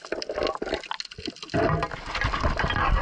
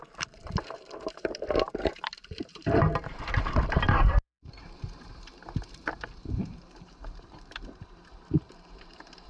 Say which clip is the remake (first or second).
second